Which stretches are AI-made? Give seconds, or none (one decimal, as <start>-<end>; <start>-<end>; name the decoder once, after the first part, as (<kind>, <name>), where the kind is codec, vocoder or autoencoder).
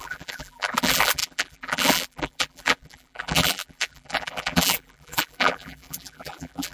0.0-6.7 (vocoder, BigVGAN v2)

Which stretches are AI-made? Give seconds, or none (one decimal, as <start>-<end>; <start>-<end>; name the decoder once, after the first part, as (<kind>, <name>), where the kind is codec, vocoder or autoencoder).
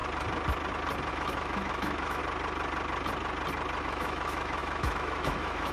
1.1-2.2 (autoencoder, DAC-VAE); 3.8-5.7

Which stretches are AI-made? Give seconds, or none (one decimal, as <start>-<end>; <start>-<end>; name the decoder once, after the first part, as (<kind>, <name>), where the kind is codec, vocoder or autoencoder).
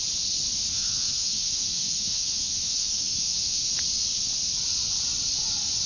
0.7-3.7 (autoencoder, DAC-VAE)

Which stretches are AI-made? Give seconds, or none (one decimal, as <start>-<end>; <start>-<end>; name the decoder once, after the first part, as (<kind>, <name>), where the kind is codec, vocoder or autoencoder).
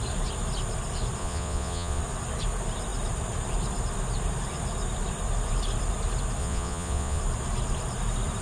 1.2-2.0 (vocoder, Vocos); 6.4-7.2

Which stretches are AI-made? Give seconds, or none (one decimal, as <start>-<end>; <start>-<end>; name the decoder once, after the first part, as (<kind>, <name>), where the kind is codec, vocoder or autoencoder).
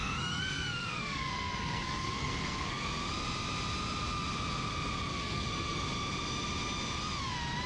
0.0-2.9 (codec, SNAC); 5.1-5.8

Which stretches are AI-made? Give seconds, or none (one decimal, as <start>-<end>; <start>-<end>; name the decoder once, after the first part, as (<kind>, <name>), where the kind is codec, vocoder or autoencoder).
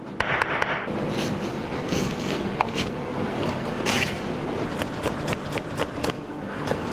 1.5-4.2 (codec, SNAC); 6.0-6.9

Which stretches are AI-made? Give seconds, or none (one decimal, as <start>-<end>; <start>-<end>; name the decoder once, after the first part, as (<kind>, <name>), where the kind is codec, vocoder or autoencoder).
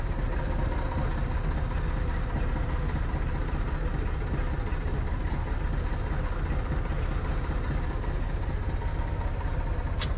none